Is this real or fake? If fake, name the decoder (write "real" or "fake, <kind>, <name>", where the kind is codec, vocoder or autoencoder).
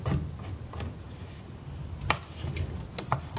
real